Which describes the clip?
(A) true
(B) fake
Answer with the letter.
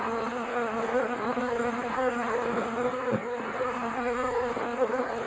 B